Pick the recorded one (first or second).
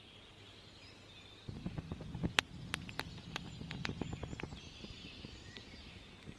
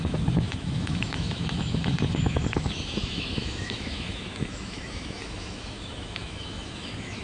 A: first